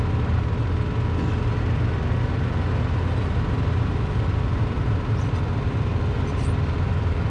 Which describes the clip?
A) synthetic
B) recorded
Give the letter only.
B